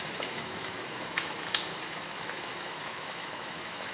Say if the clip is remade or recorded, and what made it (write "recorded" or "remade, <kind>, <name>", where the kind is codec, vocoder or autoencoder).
remade, autoencoder, DAC-VAE